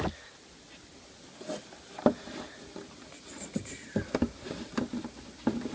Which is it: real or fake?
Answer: real